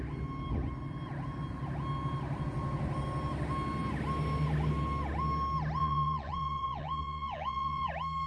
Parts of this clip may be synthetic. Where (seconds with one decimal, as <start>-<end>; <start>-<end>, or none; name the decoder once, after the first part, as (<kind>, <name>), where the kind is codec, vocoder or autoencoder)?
5.8-7.9 (vocoder, Vocos)